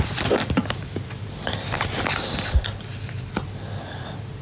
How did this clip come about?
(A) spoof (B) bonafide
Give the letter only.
B